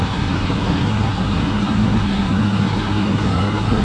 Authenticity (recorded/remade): remade